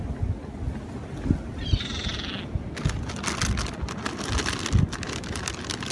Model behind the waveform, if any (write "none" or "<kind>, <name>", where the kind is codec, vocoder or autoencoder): none